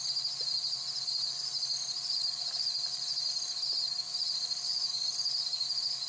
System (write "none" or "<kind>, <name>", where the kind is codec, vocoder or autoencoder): none